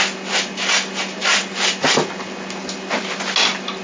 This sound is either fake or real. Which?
real